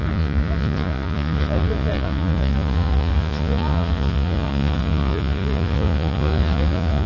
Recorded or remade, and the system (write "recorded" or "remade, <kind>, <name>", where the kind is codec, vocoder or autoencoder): remade, vocoder, Vocos